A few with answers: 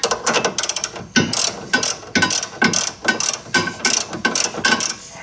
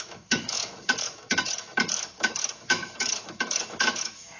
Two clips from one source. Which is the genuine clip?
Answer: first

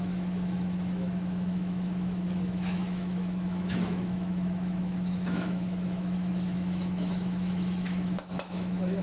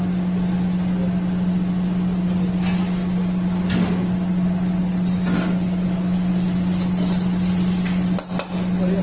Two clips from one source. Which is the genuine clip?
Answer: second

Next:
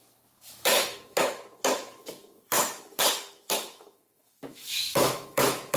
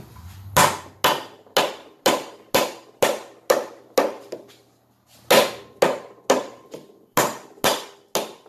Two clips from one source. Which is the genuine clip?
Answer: second